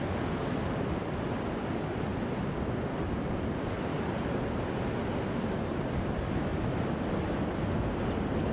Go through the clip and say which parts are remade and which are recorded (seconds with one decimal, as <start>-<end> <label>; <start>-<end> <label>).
0.0-8.5 recorded